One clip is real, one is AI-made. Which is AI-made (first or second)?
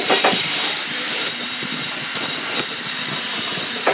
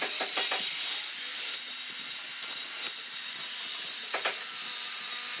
first